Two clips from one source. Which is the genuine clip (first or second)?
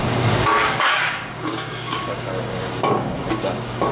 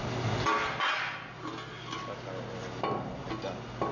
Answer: second